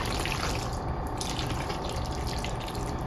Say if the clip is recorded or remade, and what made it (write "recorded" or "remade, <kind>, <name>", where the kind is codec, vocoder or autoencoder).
recorded